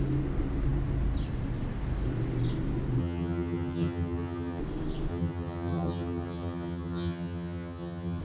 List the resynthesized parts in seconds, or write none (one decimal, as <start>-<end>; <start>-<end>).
3.0-4.6; 5.1-8.2